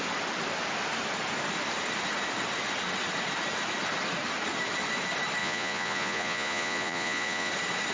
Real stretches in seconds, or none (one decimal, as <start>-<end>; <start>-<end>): 0.0-5.4; 7.5-7.9